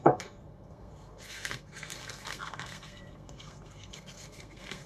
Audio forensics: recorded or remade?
remade